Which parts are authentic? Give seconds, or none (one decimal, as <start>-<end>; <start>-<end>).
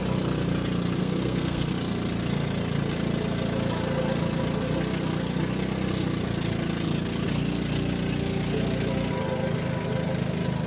0.0-1.0; 1.7-10.7